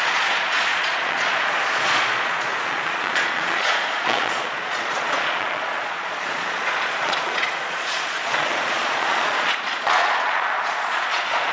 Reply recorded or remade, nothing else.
remade